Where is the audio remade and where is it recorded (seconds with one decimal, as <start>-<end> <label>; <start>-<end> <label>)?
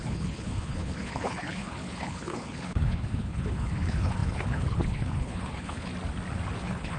0.0-5.9 remade; 5.9-6.6 recorded; 6.6-7.0 remade